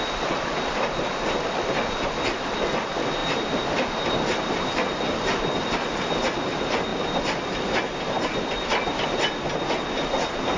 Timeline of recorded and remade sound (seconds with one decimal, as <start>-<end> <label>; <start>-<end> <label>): 0.0-10.6 recorded